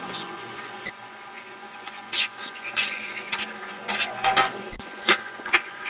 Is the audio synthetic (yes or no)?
yes